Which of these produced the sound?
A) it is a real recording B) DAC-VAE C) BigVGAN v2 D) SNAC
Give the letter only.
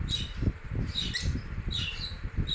C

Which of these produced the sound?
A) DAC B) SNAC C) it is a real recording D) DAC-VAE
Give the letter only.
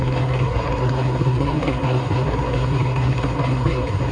B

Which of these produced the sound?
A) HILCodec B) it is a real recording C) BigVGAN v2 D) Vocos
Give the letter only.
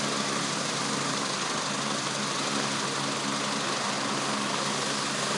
B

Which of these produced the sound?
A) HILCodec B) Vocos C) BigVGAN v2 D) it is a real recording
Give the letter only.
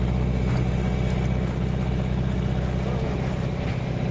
D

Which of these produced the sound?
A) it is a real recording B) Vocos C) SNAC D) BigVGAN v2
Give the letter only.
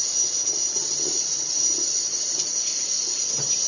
A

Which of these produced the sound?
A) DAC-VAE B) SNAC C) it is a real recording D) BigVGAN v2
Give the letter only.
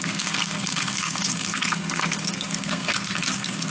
B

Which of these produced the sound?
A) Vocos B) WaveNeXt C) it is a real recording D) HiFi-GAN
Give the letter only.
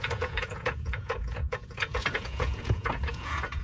A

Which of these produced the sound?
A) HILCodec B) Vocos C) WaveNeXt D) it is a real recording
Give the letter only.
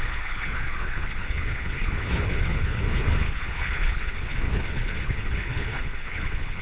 A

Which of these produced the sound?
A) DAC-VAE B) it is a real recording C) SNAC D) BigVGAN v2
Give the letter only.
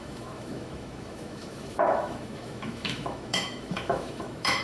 A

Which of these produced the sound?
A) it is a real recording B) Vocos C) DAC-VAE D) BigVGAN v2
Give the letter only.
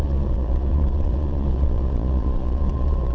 B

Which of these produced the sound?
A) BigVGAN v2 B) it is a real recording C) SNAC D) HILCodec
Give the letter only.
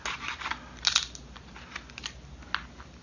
B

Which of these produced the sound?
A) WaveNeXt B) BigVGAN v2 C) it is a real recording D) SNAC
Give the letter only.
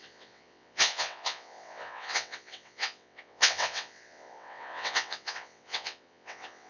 A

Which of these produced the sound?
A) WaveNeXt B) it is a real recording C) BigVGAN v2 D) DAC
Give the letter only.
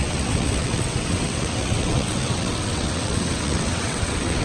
A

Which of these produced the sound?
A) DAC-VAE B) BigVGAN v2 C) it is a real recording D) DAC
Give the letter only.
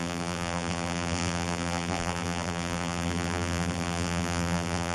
B